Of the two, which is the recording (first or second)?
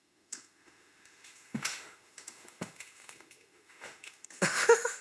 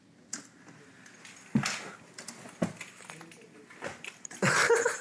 second